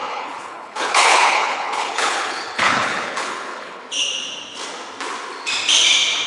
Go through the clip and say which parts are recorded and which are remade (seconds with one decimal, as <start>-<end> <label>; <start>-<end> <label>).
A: 0.0-3.8 remade; 3.8-6.3 recorded